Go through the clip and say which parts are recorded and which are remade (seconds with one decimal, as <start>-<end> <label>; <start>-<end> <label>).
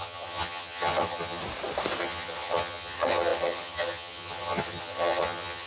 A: 0.0-1.4 remade; 1.4-2.0 recorded; 2.0-5.7 remade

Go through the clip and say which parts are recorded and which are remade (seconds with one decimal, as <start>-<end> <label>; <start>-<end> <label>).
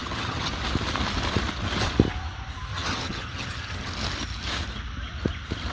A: 0.0-0.5 remade; 0.5-2.7 recorded; 2.7-3.9 remade; 3.9-5.7 recorded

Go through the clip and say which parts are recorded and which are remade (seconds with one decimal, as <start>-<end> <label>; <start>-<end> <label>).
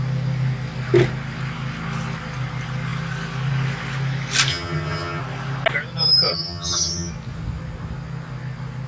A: 0.0-4.5 recorded; 4.5-5.2 remade; 5.2-6.3 recorded; 6.3-7.1 remade; 7.1-8.9 recorded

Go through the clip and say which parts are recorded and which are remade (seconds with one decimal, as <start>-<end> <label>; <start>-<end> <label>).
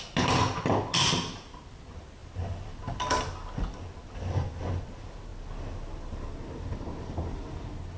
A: 0.0-8.0 recorded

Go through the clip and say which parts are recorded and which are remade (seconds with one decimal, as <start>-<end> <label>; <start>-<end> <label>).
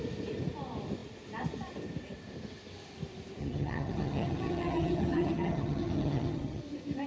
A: 0.0-3.4 recorded; 3.4-6.6 remade; 6.6-7.1 recorded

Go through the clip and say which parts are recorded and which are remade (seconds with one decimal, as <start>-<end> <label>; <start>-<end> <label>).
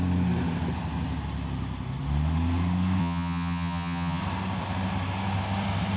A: 0.0-3.0 recorded; 3.0-4.2 remade; 4.2-6.0 recorded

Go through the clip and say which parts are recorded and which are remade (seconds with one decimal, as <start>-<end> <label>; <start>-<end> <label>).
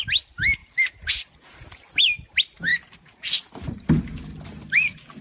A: 0.0-5.2 recorded